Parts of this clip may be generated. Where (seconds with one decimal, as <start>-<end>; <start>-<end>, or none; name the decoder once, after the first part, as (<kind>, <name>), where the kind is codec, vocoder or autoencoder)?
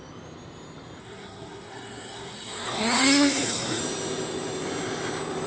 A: 1.0-3.8 (codec, SNAC)